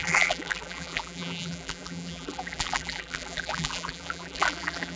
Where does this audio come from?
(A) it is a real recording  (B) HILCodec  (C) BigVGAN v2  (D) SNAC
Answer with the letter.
C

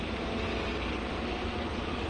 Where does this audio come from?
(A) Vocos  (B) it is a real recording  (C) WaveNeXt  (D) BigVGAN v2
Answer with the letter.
B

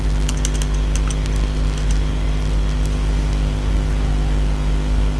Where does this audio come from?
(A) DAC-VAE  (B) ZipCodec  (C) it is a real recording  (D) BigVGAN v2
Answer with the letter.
C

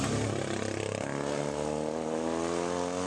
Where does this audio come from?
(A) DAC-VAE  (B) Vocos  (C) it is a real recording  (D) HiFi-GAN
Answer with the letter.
C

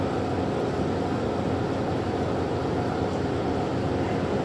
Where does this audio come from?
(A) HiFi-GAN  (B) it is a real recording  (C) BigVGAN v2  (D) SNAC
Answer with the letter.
B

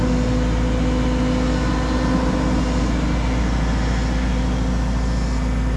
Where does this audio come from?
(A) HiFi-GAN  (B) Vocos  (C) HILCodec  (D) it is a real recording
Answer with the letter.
D